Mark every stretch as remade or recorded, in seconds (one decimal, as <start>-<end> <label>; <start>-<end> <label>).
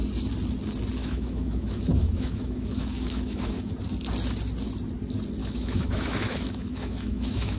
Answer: 0.0-1.0 recorded; 1.0-3.7 remade; 3.7-5.4 recorded; 5.4-7.6 remade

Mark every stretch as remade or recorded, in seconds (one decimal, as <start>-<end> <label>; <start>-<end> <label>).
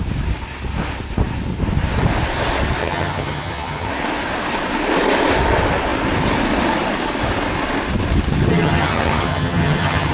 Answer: 0.0-2.8 recorded; 2.8-3.9 remade; 3.9-8.5 recorded; 8.5-10.1 remade